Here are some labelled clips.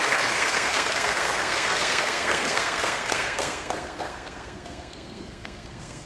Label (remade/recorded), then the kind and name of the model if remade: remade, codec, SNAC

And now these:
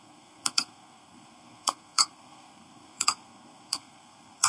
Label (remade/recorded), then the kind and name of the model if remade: remade, codec, SNAC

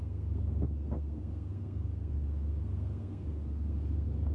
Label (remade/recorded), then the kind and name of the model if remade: remade, codec, SNAC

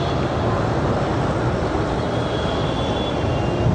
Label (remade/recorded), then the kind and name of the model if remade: recorded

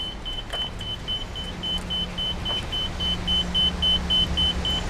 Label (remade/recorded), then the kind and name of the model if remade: recorded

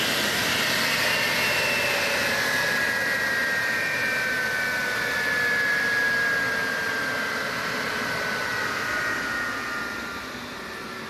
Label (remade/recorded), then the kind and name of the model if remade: recorded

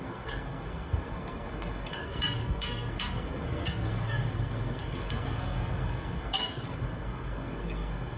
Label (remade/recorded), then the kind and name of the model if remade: remade, codec, SNAC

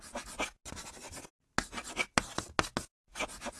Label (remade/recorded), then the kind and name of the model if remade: recorded